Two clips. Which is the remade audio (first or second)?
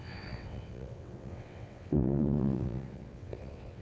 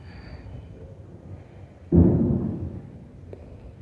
first